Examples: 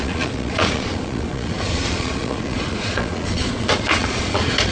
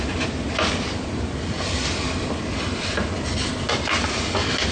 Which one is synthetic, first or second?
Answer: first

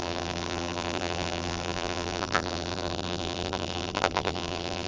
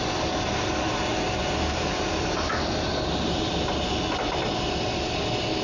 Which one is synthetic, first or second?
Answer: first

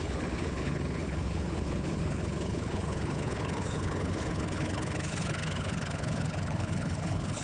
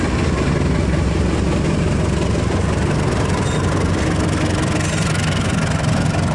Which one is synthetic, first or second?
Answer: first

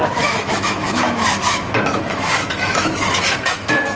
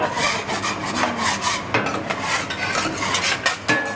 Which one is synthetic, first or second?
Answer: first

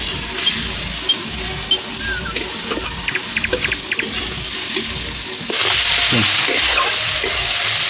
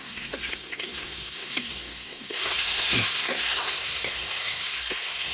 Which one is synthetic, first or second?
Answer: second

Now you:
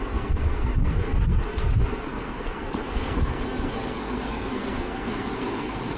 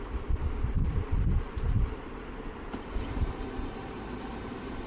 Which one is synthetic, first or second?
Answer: first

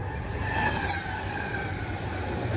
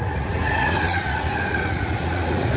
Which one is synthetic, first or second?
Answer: second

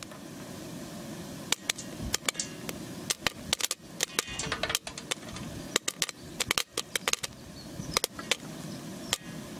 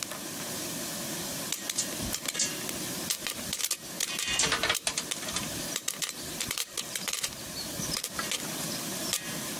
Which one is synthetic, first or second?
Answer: second